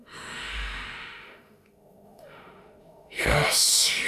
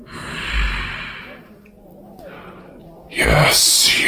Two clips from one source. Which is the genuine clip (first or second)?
second